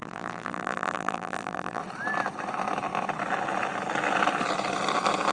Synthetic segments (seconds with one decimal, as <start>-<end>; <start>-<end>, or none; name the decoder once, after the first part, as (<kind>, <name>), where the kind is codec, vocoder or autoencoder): 0.0-1.8 (vocoder, BigVGAN v2)